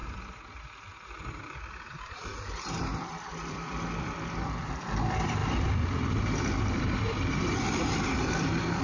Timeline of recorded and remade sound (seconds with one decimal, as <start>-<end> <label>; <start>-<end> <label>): 0.0-1.7 recorded; 1.7-8.8 remade